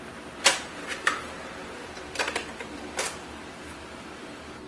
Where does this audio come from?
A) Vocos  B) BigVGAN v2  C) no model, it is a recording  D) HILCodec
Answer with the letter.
B